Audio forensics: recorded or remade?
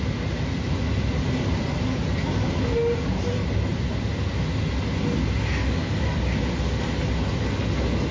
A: recorded